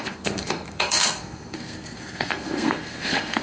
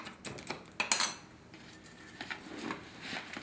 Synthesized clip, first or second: first